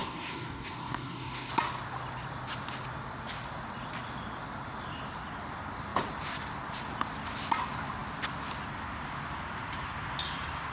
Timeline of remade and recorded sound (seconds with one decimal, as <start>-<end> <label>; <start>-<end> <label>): 0.0-1.5 remade; 1.5-10.7 recorded